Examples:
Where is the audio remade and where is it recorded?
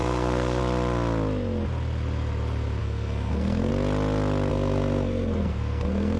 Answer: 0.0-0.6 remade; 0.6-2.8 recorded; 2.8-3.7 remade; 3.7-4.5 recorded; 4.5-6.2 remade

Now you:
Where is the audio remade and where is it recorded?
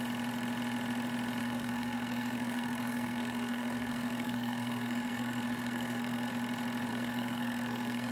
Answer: 0.0-1.4 recorded; 1.4-6.3 remade; 6.3-6.9 recorded; 6.9-8.1 remade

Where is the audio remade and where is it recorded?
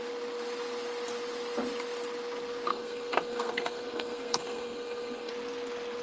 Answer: 0.0-2.7 recorded; 2.7-5.3 remade; 5.3-6.0 recorded